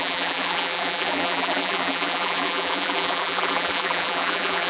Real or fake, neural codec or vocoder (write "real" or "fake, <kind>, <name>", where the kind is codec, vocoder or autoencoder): fake, vocoder, BigVGAN v2